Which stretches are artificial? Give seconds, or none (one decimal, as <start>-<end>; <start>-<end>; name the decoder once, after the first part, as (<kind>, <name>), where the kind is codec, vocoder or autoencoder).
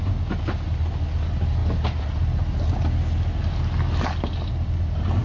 none